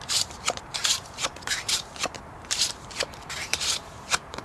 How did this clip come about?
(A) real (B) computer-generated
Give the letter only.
B